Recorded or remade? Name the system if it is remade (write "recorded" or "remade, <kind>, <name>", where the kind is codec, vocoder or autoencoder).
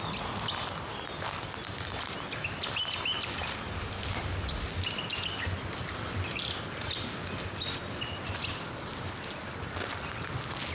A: recorded